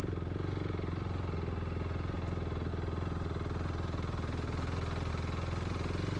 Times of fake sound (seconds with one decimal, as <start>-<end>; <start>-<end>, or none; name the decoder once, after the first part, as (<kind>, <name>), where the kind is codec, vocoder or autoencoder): none